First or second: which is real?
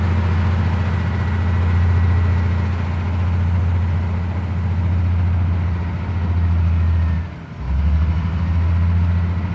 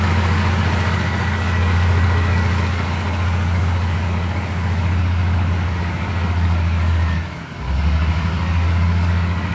first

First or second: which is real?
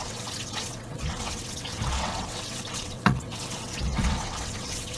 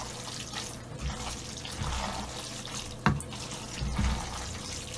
second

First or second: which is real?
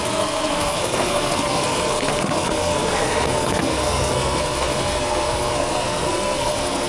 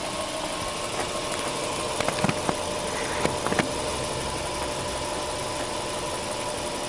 second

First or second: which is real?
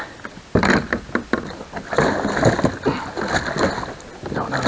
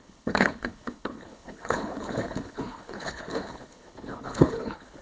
first